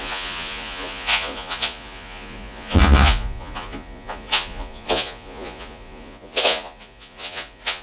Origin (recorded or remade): remade